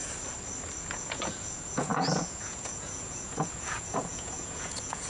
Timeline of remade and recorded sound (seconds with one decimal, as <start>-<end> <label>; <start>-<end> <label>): 0.0-0.8 recorded; 0.8-5.1 remade